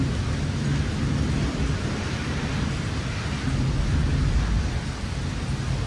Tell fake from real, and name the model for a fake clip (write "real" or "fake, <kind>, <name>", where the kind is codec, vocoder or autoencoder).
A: real